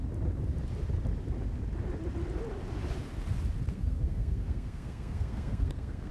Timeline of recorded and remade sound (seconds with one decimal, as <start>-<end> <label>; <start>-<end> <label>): 0.0-3.7 recorded; 3.7-6.1 remade